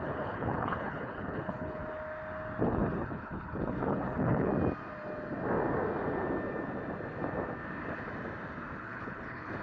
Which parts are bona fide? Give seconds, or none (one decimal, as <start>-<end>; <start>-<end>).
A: 1.8-2.6; 4.5-8.8